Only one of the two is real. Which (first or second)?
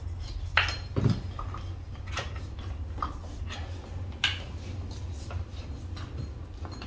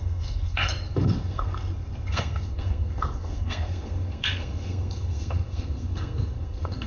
first